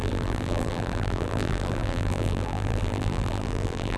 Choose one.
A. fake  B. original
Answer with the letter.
A